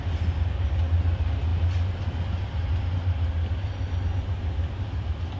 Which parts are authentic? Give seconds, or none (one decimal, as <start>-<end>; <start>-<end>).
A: 0.0-5.4